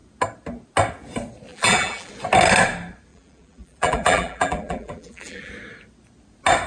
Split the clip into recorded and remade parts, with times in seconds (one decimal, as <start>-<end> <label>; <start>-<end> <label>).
0.0-1.5 recorded; 1.5-2.1 remade; 2.1-3.1 recorded; 3.1-5.5 remade; 5.5-6.7 recorded